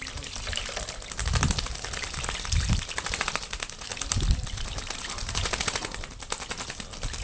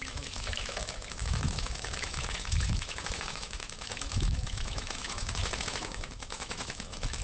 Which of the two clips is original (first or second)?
first